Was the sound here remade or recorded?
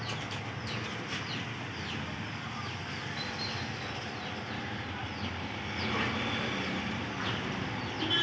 recorded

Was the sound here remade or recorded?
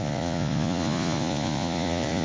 remade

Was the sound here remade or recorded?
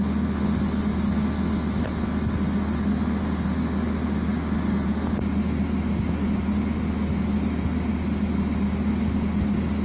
recorded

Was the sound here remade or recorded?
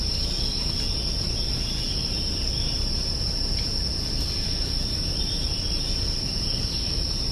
recorded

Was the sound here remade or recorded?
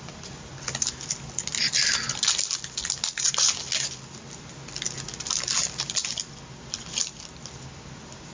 recorded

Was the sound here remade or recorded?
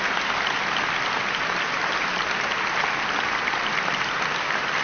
recorded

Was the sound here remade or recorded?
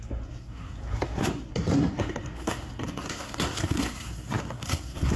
remade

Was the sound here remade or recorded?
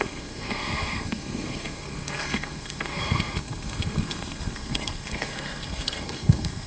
remade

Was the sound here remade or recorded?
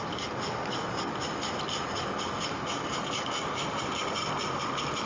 recorded